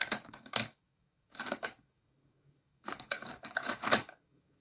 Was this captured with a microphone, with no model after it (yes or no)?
no